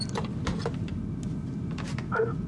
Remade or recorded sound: recorded